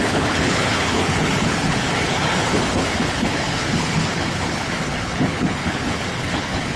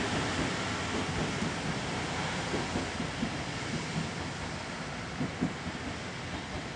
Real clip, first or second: second